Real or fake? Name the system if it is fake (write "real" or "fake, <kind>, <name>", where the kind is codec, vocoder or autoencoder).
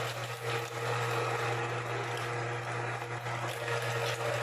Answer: real